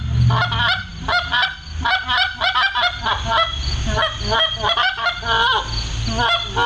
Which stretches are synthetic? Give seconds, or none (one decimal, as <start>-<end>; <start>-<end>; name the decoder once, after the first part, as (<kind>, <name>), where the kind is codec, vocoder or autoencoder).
none